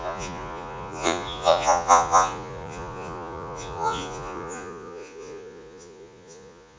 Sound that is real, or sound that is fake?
fake